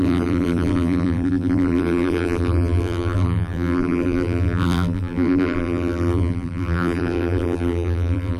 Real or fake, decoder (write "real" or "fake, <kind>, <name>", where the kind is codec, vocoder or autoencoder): fake, vocoder, BigVGAN v2